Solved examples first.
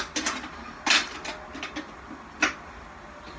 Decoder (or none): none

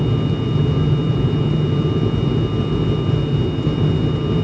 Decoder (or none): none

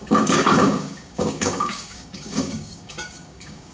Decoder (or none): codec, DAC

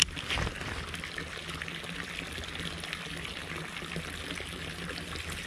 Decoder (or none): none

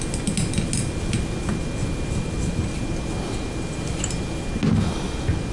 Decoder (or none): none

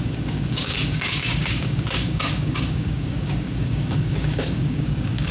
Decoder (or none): codec, DAC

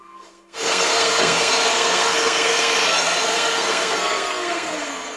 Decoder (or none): codec, SNAC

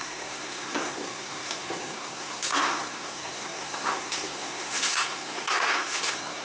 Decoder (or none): codec, SNAC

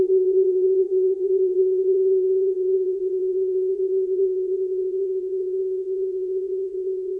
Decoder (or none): vocoder, WaveNeXt